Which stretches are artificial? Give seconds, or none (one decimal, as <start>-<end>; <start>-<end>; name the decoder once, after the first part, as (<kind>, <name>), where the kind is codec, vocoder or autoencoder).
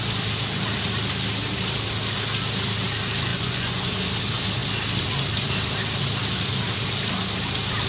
3.3-3.9 (vocoder, Vocos)